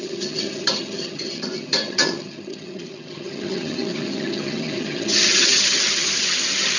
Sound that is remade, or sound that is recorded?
remade